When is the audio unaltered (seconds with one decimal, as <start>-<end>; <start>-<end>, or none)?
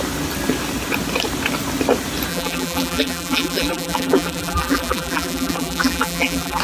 0.0-2.3